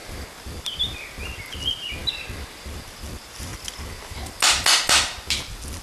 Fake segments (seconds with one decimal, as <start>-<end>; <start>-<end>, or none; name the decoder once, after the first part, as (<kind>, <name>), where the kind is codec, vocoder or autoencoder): none